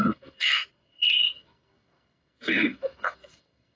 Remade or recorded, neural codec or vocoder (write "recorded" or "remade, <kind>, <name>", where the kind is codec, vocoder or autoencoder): remade, codec, SNAC